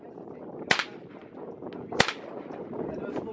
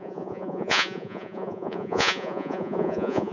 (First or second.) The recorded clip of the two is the first